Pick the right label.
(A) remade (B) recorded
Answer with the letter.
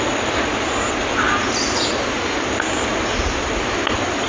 B